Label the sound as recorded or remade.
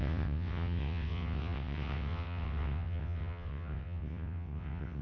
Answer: remade